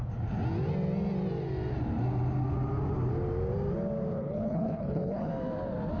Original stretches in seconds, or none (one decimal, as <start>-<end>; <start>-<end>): 0.0-4.1; 5.3-6.0